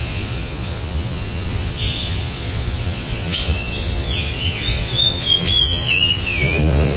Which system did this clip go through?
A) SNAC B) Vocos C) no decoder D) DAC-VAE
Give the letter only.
B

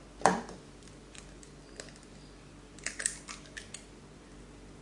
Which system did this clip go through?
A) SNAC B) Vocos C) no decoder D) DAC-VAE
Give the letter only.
C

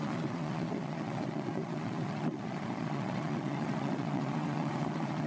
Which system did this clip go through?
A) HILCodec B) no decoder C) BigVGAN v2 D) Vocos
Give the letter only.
D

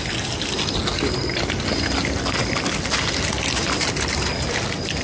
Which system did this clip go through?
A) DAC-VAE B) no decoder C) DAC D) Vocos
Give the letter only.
B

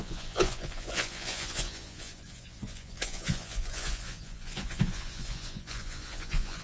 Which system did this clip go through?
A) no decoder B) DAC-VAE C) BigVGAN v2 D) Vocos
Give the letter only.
D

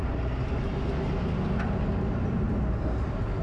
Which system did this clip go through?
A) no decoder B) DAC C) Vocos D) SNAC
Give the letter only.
A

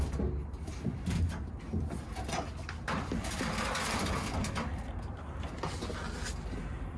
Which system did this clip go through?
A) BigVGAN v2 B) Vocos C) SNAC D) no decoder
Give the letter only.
D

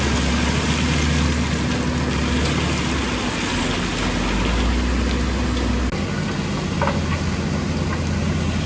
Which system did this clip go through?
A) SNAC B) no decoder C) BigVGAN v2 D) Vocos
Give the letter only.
B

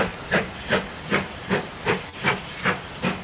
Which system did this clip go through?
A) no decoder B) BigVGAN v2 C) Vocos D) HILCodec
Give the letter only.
A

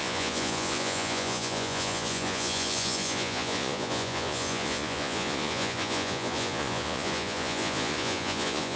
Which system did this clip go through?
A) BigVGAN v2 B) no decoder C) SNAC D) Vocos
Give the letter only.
D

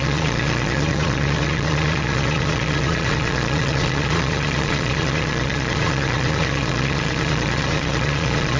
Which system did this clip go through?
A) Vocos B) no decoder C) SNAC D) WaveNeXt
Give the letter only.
A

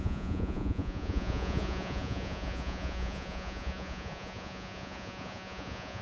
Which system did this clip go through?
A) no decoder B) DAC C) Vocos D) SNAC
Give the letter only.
C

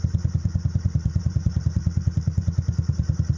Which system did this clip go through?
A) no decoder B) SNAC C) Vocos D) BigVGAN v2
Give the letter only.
C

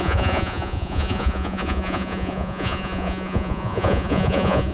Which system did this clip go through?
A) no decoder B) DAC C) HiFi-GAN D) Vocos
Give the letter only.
D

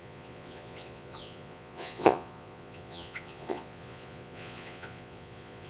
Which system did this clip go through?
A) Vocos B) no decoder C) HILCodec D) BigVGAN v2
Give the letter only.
A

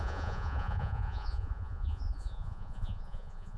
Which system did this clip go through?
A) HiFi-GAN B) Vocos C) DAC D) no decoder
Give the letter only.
B